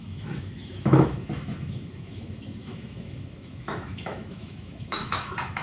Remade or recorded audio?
remade